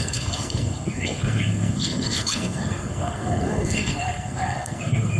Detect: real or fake fake